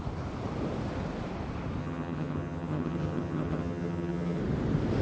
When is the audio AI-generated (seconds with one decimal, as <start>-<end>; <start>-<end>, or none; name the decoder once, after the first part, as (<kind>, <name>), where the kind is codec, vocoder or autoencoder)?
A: 1.8-4.4 (vocoder, HiFi-GAN)